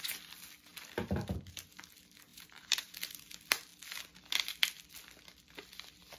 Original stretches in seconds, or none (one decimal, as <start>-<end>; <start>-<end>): 0.0-2.3; 3.2-6.2